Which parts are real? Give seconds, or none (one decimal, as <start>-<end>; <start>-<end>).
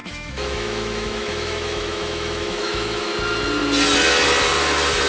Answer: 3.1-5.1